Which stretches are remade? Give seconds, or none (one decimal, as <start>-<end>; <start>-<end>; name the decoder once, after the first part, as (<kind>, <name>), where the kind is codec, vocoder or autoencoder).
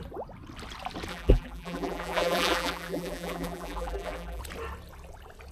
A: 1.1-4.4 (vocoder, BigVGAN v2)